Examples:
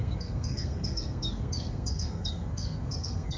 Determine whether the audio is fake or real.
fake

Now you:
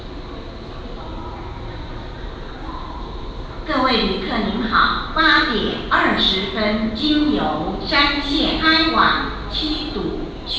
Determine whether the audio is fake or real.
real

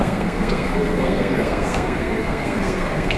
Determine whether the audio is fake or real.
fake